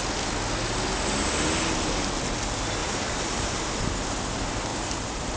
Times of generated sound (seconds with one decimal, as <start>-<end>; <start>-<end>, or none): 2.8-3.8; 4.7-5.4